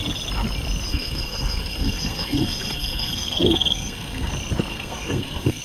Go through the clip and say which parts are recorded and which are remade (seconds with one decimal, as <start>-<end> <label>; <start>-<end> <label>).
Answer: 0.0-0.9 recorded; 0.9-4.3 remade; 4.3-4.7 recorded; 4.7-5.6 remade